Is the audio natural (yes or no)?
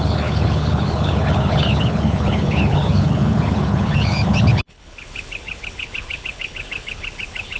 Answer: no